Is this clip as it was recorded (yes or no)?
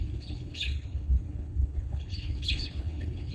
no